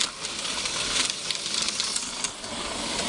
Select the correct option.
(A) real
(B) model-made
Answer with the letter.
B